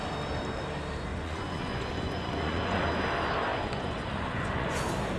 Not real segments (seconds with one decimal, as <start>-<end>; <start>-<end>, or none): 1.1-2.8; 3.5-4.8